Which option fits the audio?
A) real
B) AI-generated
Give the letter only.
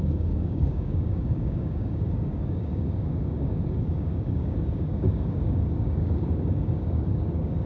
B